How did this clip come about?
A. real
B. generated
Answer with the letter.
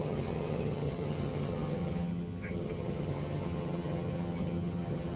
B